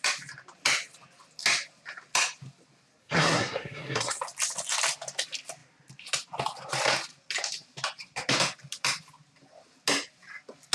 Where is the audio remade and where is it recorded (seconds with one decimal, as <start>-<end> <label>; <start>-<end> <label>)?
0.0-3.0 recorded; 3.0-4.2 remade; 4.2-10.7 recorded